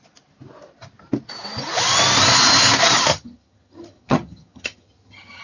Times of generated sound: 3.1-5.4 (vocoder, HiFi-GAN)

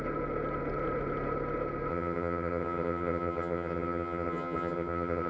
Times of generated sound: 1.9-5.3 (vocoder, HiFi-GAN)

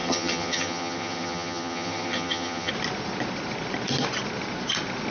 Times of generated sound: 0.0-2.7 (vocoder, HiFi-GAN)